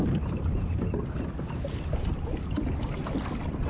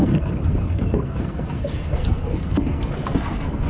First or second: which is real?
first